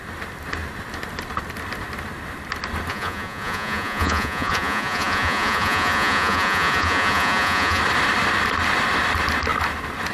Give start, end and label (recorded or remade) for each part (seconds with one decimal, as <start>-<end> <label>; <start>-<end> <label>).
0.0-2.9 recorded; 2.9-7.8 remade; 7.8-10.1 recorded